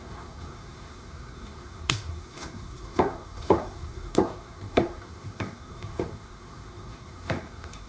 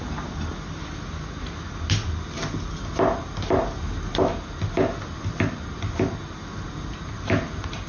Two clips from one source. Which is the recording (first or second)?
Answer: second